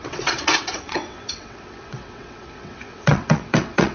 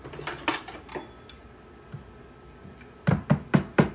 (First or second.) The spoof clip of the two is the first